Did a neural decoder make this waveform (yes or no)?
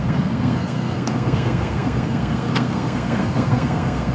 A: yes